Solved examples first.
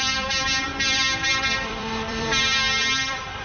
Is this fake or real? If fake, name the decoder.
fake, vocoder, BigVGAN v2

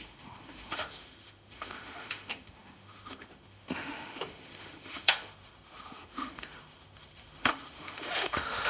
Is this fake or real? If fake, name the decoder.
fake, autoencoder, DAC-VAE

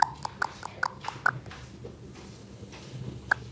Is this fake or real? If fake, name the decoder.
real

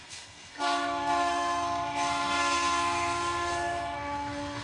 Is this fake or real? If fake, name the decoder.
fake, codec, SNAC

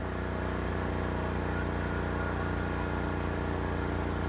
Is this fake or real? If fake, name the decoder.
real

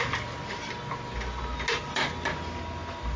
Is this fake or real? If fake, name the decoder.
real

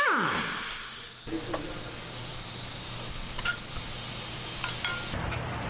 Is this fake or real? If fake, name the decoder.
real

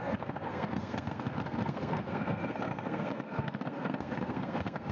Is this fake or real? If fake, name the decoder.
fake, codec, SNAC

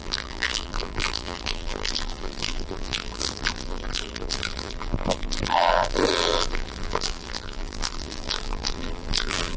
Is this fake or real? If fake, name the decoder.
fake, vocoder, BigVGAN v2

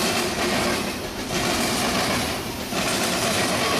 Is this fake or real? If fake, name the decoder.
real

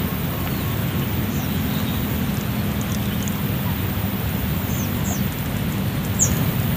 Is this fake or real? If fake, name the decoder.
real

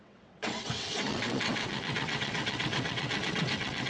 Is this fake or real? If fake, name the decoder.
fake, vocoder, WaveNeXt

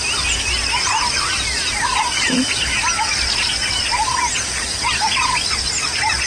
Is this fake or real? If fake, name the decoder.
real